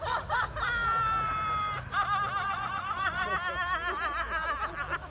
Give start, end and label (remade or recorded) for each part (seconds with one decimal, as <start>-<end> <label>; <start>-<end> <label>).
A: 0.0-2.4 recorded; 2.4-3.3 remade; 3.3-5.1 recorded